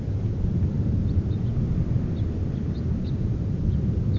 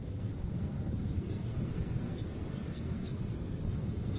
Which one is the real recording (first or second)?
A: first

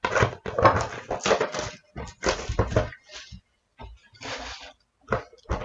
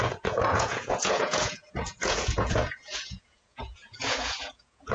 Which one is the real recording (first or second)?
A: first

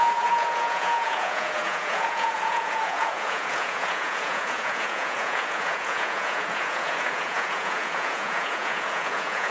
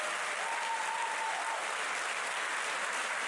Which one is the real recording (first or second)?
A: second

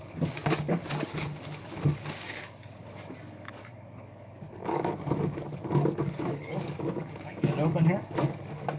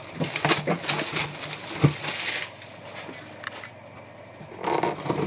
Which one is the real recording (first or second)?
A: second